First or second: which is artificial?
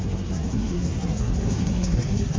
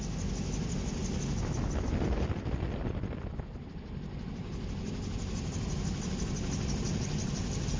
first